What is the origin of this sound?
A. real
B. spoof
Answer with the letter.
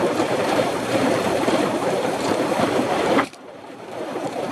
B